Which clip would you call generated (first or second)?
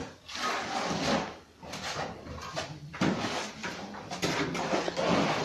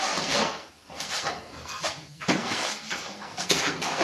second